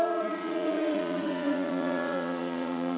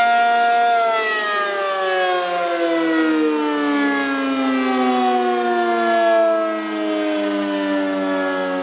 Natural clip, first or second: second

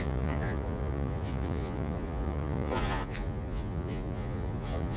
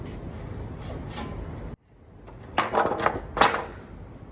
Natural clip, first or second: second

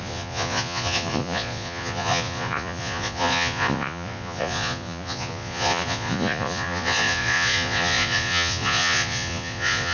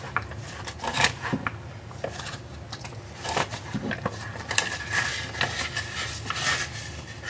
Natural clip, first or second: second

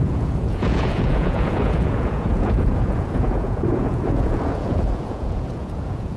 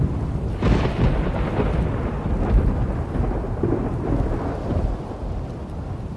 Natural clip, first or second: second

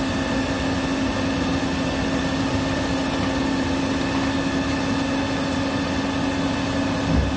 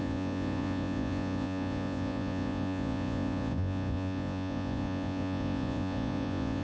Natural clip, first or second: first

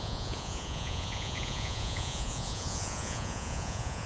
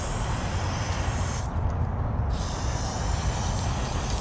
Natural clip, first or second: second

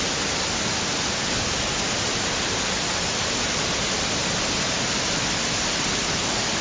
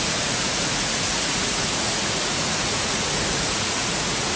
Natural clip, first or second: first